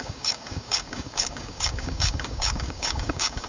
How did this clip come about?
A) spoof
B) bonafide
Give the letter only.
A